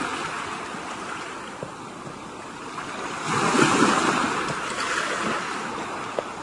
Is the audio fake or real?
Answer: real